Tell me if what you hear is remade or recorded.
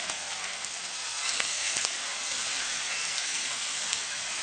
remade